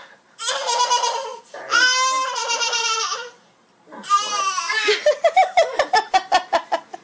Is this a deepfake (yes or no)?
yes